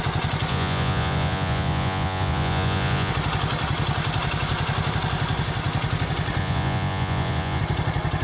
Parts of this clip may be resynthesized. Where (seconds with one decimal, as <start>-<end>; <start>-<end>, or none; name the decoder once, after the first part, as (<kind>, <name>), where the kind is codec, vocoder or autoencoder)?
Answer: 0.5-3.1 (vocoder, Vocos); 6.4-7.6